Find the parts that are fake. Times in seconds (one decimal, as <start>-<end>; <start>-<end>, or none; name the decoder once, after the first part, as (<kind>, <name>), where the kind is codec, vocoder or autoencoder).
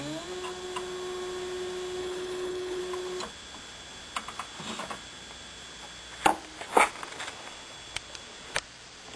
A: 2.0-2.8 (codec, HILCodec)